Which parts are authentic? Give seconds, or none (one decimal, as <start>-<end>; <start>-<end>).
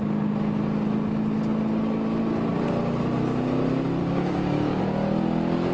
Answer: 0.0-4.0; 4.8-5.7